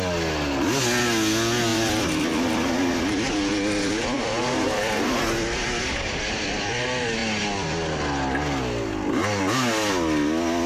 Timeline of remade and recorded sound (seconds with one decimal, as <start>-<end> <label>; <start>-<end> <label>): 0.0-1.7 recorded; 1.7-6.7 remade; 6.7-10.7 recorded